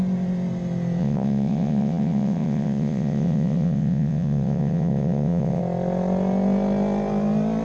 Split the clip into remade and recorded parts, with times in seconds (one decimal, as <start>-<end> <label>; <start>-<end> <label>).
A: 0.0-1.0 recorded; 1.0-5.6 remade; 5.6-7.6 recorded